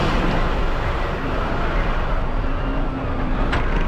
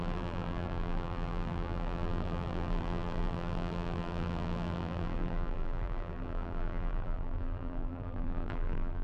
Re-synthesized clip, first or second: second